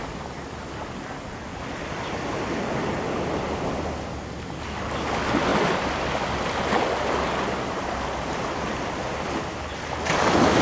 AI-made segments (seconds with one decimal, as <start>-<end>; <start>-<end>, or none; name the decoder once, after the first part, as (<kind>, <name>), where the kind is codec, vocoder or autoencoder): none